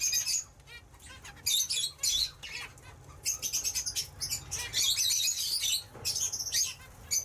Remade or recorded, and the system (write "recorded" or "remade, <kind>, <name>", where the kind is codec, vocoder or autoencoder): recorded